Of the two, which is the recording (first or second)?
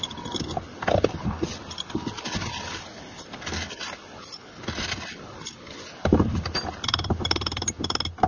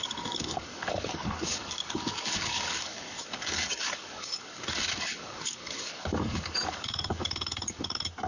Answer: first